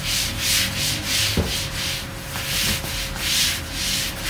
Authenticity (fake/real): real